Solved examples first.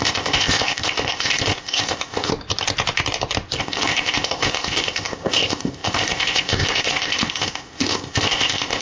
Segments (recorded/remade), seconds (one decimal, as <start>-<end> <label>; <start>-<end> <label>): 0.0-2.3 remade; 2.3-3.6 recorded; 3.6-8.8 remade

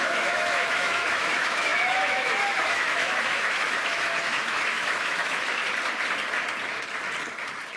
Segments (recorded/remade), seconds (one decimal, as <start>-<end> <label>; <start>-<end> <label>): 0.0-5.6 remade; 5.6-7.8 recorded

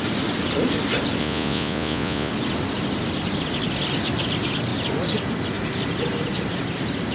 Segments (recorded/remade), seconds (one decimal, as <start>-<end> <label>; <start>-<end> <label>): 0.0-1.2 recorded; 1.2-2.3 remade; 2.3-7.1 recorded